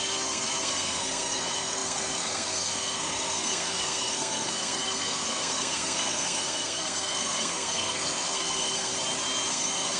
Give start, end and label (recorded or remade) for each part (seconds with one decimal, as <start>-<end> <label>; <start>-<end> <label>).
0.0-8.9 remade; 8.9-9.5 recorded; 9.5-10.0 remade